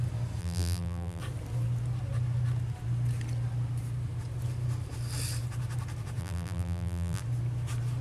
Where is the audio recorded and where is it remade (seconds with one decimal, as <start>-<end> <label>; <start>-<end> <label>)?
0.0-0.4 recorded; 0.4-1.2 remade; 1.2-6.2 recorded; 6.2-7.2 remade; 7.2-8.0 recorded